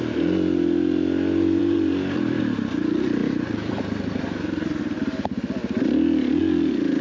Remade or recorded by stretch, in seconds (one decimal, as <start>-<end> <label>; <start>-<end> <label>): 0.0-1.6 recorded; 1.6-2.4 remade; 2.4-3.2 recorded; 3.2-4.8 remade; 4.8-5.6 recorded; 5.6-6.4 remade; 6.4-7.0 recorded